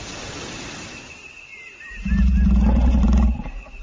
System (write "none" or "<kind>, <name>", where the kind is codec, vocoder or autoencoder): none